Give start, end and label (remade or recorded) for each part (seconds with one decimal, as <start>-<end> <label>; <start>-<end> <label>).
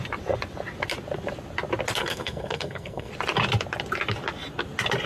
0.0-2.0 recorded; 2.0-3.1 remade; 3.1-5.1 recorded